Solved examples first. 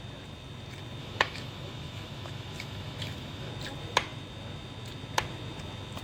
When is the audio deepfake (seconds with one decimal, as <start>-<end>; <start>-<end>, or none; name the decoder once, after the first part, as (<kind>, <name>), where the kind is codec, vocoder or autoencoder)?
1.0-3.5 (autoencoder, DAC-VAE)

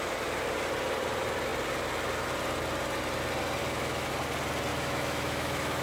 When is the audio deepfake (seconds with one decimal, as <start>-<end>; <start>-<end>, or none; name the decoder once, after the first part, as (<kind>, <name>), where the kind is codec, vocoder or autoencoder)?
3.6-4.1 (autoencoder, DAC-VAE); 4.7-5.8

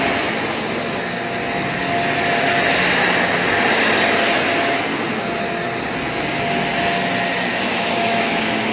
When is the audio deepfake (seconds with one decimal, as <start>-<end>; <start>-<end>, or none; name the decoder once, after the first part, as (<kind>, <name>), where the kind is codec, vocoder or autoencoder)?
7.5-8.7 (autoencoder, DAC-VAE)

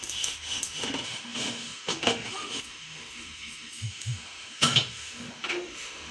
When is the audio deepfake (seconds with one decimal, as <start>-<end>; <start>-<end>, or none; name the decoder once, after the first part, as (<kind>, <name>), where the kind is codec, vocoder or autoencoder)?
0.0-6.1 (autoencoder, DAC-VAE)